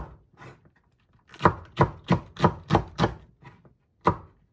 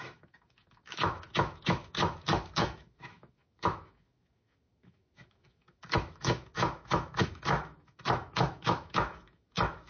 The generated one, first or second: second